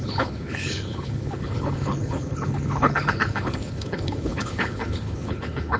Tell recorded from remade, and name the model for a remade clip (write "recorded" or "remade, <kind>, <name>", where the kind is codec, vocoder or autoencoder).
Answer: remade, codec, HILCodec